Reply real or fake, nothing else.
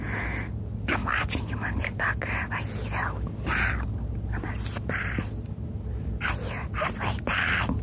real